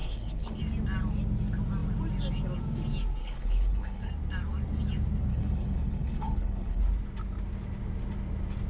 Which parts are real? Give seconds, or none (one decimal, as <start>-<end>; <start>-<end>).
0.6-3.2; 4.1-5.3; 6.8-8.7